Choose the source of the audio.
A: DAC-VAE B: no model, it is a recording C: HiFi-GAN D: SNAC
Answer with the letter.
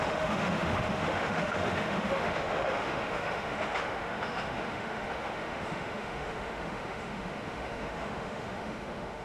A